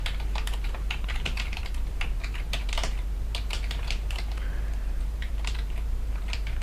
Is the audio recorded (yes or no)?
no